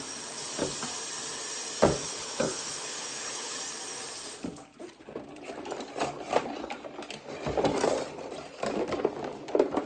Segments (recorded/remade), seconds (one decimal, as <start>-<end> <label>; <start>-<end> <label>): 0.0-2.0 recorded; 2.0-3.6 remade; 3.6-9.9 recorded